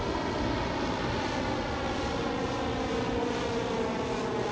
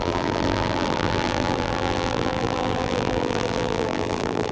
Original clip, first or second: first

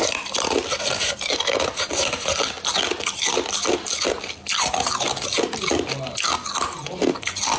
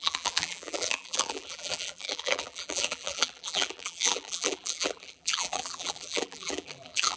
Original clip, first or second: first